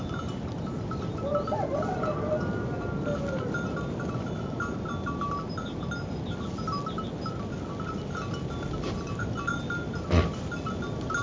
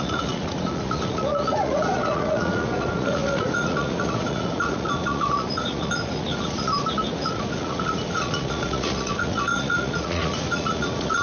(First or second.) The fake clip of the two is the second